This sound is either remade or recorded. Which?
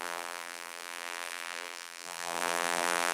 remade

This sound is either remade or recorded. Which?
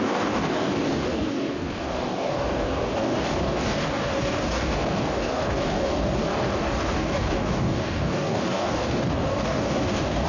remade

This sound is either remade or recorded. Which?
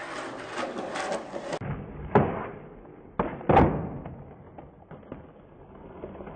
recorded